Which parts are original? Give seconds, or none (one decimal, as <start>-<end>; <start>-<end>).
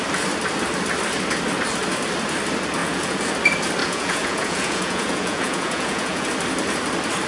0.0-2.8; 3.3-3.8; 6.3-7.3